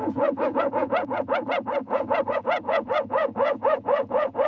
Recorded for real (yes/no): no